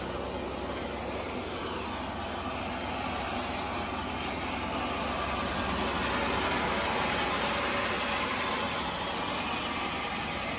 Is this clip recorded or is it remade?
recorded